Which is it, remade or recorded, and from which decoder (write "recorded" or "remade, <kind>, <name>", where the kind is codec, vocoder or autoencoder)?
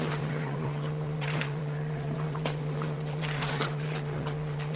remade, vocoder, WaveNeXt